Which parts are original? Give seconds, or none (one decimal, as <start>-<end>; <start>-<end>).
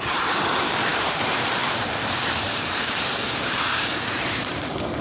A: none